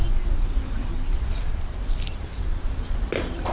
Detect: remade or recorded recorded